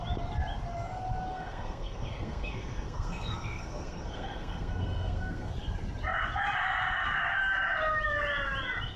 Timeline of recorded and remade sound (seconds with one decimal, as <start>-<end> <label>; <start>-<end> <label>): 0.0-1.3 recorded; 1.3-5.5 remade; 5.5-9.0 recorded